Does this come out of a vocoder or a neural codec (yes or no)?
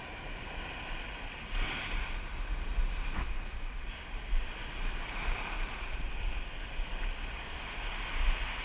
no